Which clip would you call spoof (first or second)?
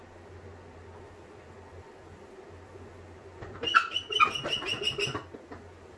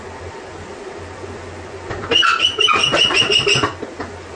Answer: second